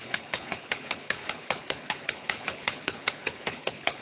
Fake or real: fake